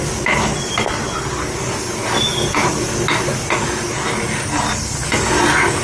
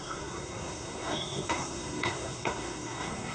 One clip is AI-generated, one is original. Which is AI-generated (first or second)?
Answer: second